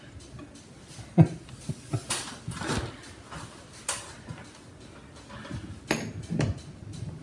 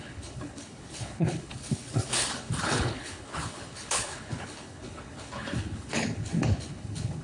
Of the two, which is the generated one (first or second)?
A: second